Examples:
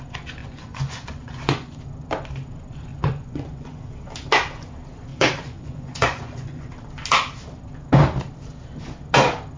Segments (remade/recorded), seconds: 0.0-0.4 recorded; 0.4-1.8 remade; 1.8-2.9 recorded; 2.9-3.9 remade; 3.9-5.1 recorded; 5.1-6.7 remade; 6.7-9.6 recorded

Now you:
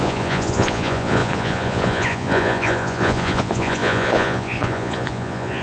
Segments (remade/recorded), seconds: 0.0-5.6 remade

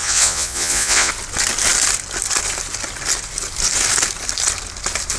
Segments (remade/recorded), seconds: 0.0-1.1 remade; 1.1-5.2 recorded

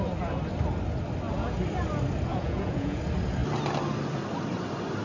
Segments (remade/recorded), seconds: 0.0-2.3 recorded; 2.3-3.0 remade; 3.0-5.0 recorded

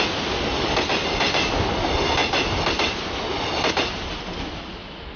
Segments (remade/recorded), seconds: 0.0-5.2 recorded

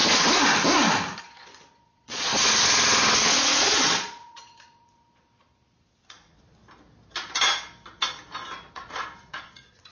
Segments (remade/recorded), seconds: 0.0-1.2 recorded; 1.2-2.3 remade; 2.3-3.2 recorded; 3.2-6.6 remade; 6.6-8.7 recorded; 8.7-9.9 remade

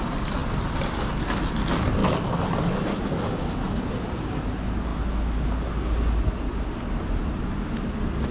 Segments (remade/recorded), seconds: 0.0-8.3 recorded

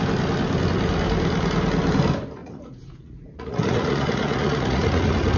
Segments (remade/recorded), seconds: 0.0-2.4 recorded; 2.4-5.4 remade